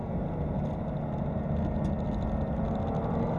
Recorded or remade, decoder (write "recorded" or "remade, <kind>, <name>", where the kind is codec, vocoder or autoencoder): recorded